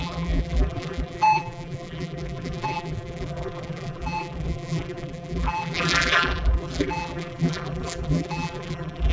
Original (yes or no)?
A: no